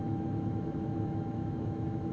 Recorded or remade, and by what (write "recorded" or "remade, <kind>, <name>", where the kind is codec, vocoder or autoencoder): remade, autoencoder, DAC-VAE